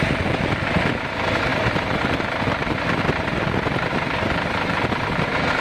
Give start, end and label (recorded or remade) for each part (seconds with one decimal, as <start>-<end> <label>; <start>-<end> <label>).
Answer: 0.0-5.6 recorded